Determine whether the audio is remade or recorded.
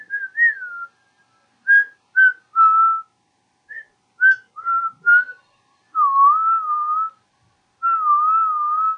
recorded